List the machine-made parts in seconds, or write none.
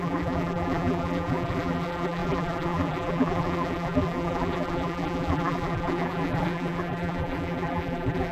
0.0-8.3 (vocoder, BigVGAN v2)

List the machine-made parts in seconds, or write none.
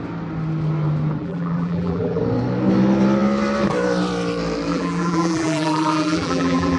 1.2-2.2 (vocoder, BigVGAN v2); 4.7-6.8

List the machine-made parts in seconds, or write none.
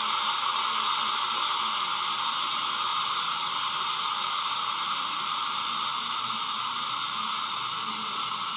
2.9-6.8 (vocoder, BigVGAN v2)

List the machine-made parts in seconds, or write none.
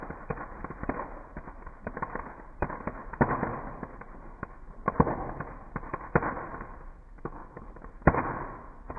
7.4-8.2 (vocoder, BigVGAN v2)